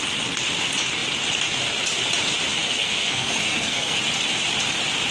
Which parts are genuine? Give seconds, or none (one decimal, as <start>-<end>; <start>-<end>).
0.0-2.5; 4.0-5.1